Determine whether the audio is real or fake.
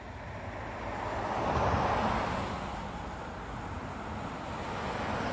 real